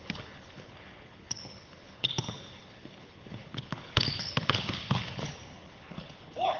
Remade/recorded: remade